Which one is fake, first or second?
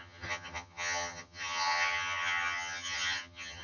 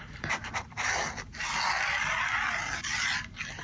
first